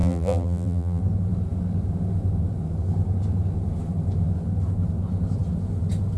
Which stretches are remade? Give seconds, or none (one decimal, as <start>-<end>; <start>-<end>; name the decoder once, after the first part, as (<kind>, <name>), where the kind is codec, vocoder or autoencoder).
0.0-1.0 (vocoder, BigVGAN v2)